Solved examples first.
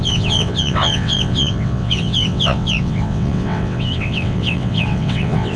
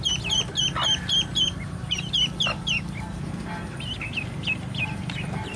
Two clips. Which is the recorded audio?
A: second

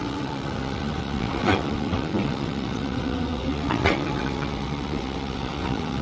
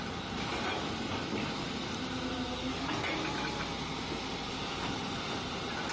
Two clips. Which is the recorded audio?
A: second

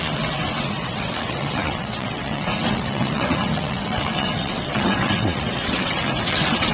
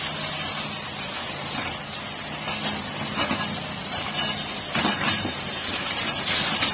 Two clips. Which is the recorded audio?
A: second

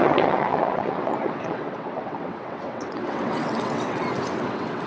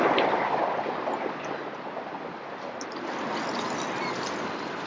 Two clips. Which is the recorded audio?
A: second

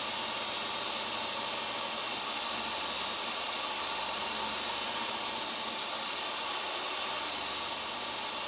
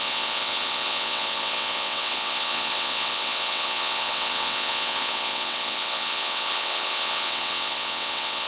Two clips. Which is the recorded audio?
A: first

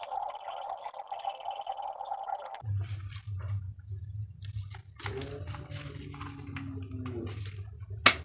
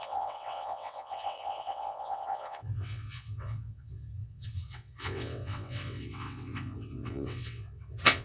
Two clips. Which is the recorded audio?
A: first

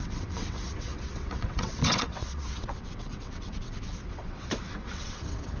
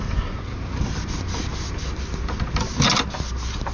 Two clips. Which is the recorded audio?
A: second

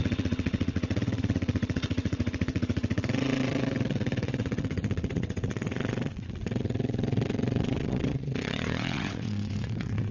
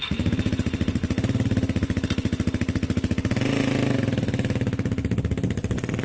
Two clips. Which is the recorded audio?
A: second